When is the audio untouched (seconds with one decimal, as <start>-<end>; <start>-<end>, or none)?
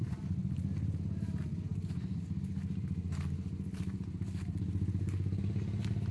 0.0-6.1